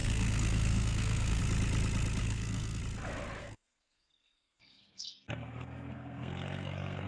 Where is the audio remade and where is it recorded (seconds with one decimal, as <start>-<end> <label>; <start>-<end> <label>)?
0.0-1.4 remade; 1.4-2.2 recorded; 2.2-2.8 remade; 2.8-3.4 recorded; 3.4-7.1 remade